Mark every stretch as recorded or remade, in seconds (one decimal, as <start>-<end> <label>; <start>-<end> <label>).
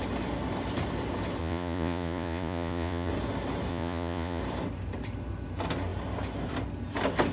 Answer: 0.0-1.4 recorded; 1.4-3.1 remade; 3.1-3.7 recorded; 3.7-4.4 remade; 4.4-7.3 recorded